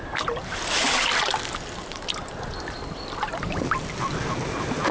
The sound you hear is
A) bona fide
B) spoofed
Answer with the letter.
A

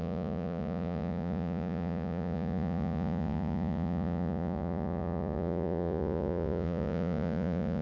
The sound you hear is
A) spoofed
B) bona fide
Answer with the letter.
A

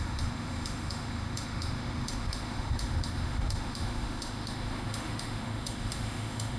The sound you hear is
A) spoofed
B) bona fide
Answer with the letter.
A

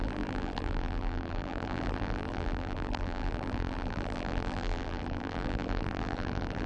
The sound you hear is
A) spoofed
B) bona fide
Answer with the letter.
A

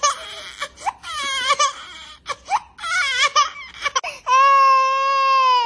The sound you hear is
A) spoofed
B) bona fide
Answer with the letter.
B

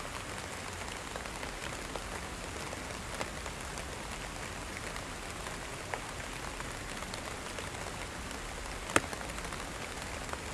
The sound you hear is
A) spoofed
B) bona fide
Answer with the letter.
B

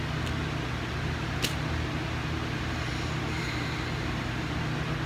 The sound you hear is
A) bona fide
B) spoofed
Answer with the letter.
A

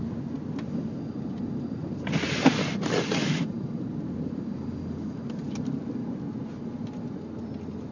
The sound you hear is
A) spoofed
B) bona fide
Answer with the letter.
B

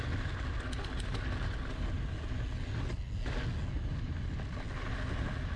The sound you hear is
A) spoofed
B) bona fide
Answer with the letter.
B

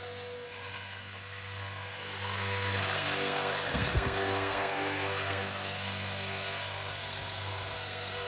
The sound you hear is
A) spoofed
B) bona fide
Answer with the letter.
A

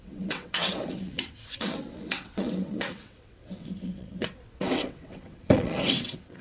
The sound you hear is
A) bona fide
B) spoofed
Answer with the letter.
B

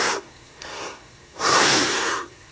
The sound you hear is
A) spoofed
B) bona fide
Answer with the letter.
A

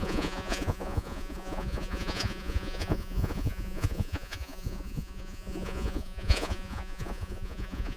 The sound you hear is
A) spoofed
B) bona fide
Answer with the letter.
A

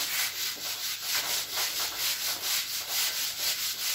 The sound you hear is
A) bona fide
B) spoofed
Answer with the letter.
A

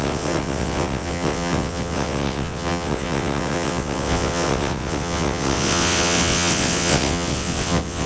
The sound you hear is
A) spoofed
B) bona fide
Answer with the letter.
A